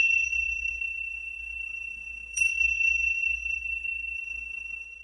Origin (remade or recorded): remade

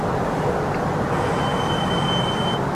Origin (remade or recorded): recorded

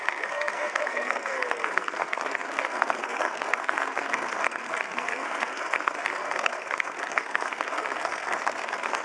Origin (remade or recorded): remade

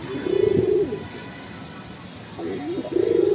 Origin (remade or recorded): recorded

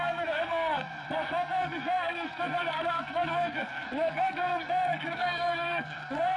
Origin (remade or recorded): remade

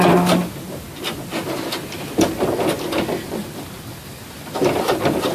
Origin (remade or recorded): recorded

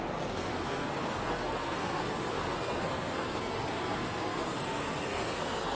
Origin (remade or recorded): remade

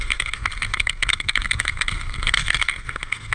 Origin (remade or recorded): remade